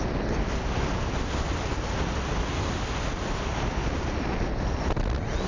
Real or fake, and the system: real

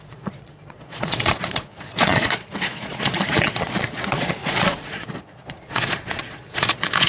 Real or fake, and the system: fake, vocoder, Vocos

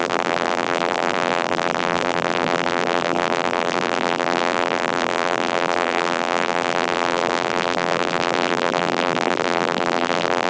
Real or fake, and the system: fake, vocoder, BigVGAN v2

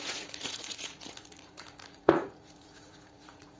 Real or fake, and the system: fake, vocoder, Vocos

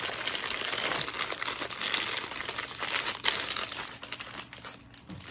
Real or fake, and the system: real